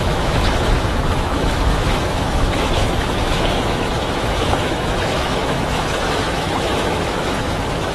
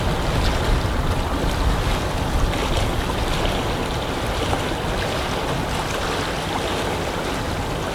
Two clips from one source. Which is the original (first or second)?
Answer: second